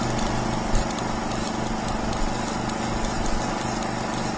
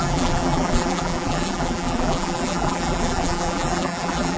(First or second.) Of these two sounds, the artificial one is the second